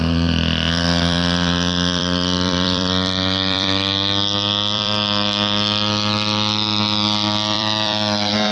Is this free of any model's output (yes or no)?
no